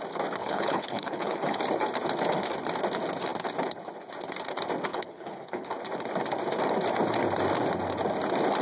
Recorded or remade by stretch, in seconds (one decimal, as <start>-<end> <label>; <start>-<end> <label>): 0.0-0.4 recorded; 0.4-1.6 remade; 1.6-4.9 recorded; 4.9-5.7 remade; 5.7-8.6 recorded